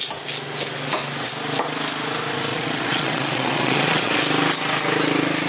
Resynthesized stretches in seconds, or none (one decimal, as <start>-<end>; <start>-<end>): 2.5-4.2